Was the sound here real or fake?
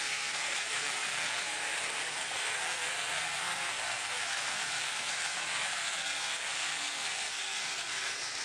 fake